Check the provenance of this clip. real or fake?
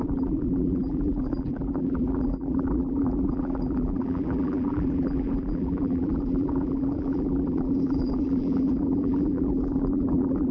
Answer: fake